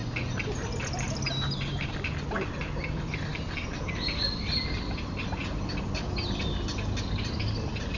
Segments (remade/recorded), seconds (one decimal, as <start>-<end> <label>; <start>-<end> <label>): 0.0-8.0 recorded